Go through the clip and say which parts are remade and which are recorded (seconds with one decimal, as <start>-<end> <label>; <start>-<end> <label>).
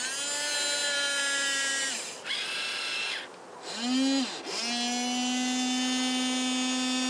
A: 0.0-7.1 recorded